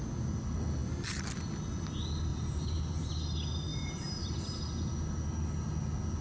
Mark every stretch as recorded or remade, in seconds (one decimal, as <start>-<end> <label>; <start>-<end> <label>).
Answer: 0.0-2.3 recorded; 2.3-3.1 remade; 3.1-3.7 recorded; 3.7-4.6 remade; 4.6-6.2 recorded